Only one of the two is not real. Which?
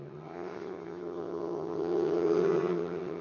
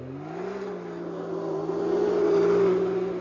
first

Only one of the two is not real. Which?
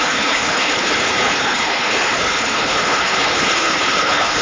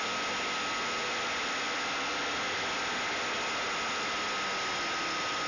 first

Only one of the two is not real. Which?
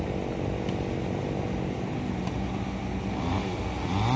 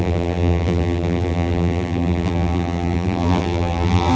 second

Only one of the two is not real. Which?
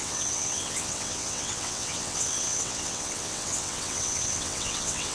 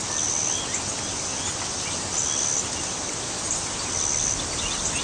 first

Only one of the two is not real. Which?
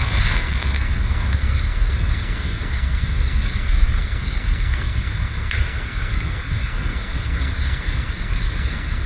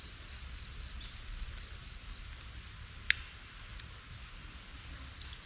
first